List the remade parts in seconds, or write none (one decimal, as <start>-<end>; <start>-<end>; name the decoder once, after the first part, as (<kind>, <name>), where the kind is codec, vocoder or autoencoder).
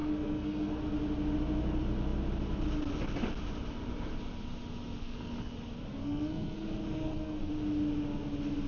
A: 0.0-0.8 (codec, SNAC); 5.0-5.5; 6.0-7.5